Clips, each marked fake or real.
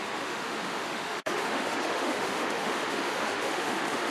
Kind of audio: fake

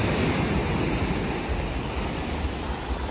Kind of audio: real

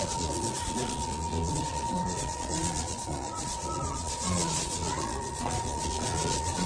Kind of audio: fake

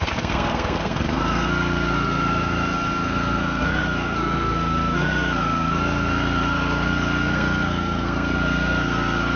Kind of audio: fake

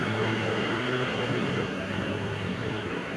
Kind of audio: fake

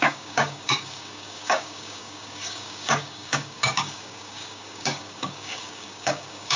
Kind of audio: fake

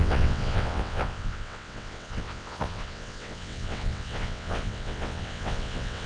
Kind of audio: fake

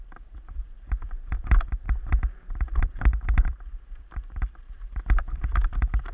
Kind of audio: fake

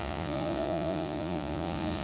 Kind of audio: fake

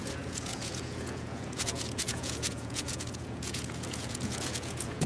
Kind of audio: fake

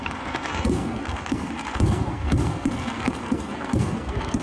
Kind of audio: fake